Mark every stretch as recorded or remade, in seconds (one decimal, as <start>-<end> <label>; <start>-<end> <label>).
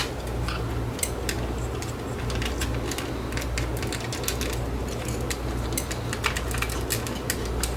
0.0-7.8 recorded